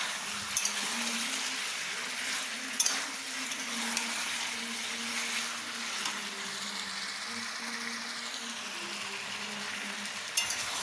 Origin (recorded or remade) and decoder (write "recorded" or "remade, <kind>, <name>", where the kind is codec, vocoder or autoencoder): recorded